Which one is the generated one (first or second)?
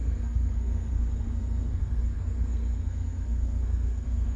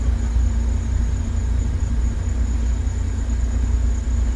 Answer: first